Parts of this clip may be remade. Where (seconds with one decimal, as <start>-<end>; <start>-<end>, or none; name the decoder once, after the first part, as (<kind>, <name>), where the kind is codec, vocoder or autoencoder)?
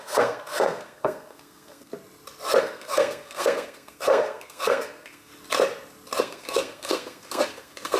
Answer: 0.0-1.9 (codec, SNAC); 2.6-5.3; 6.2-8.0